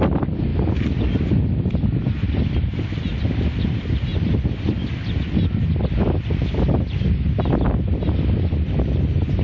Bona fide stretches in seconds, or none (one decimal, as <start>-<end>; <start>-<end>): 0.5-3.2; 4.1-9.4